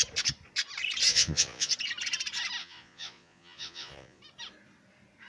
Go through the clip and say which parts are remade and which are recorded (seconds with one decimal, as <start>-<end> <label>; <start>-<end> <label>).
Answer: 0.0-1.1 recorded; 1.1-1.7 remade; 1.7-2.6 recorded; 2.6-4.2 remade; 4.2-5.3 recorded